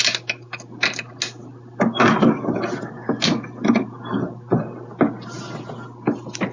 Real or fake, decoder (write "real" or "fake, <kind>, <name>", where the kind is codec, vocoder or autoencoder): real